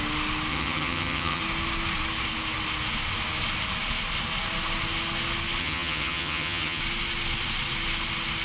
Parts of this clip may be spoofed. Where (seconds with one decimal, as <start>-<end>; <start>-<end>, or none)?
0.5-1.4; 5.6-6.8